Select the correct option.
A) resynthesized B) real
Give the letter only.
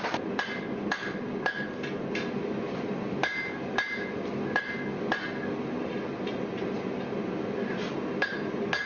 B